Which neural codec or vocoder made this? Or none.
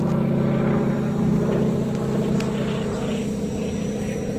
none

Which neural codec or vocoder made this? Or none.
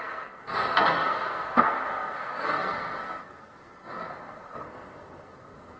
codec, SNAC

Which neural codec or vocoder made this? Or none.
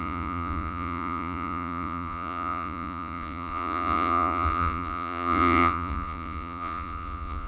vocoder, Vocos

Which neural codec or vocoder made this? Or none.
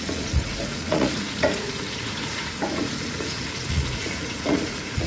vocoder, Vocos